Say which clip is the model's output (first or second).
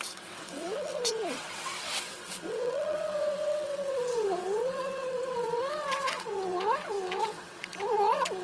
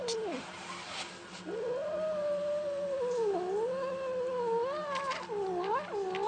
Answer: first